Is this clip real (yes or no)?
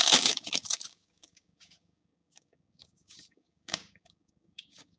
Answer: no